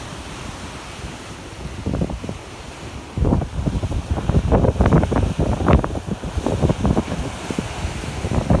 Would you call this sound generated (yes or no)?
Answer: no